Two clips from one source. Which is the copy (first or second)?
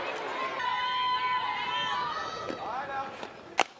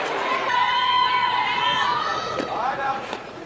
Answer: second